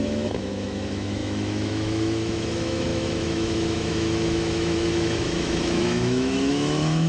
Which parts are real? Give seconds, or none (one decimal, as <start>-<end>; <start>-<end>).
none